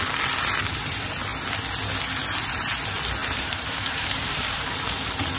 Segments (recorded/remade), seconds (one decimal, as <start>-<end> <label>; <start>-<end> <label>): 0.0-3.2 recorded; 3.2-4.9 remade; 4.9-5.4 recorded